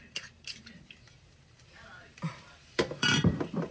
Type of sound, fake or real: fake